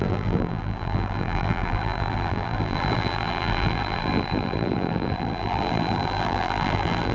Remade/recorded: remade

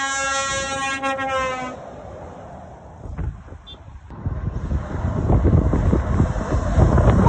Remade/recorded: recorded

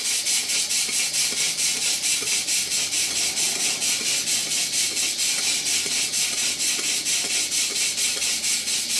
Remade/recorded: recorded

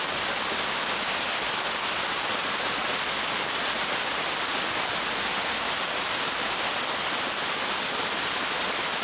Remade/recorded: recorded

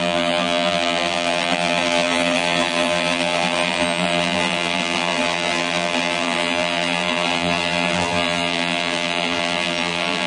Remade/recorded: remade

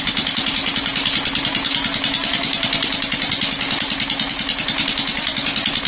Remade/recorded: recorded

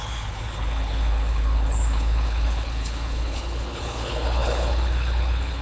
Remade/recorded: remade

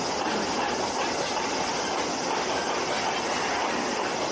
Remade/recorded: recorded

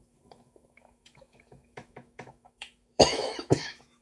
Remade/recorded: remade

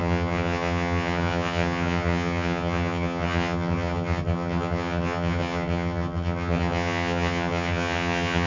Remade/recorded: remade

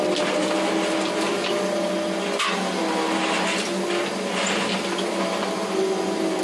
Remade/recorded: recorded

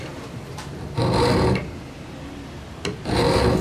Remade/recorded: recorded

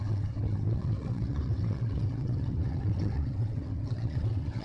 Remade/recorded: remade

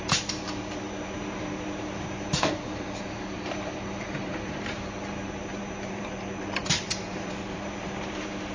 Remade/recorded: remade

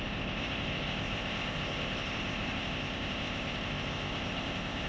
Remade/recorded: remade